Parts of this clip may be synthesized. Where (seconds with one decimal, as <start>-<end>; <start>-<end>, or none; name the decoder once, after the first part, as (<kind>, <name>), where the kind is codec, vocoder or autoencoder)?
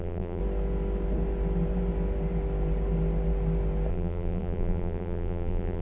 0.0-0.4 (vocoder, BigVGAN v2); 3.9-5.8